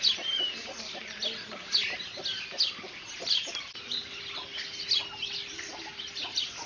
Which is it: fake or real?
real